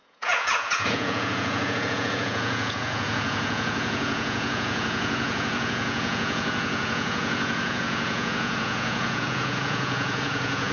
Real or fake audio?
fake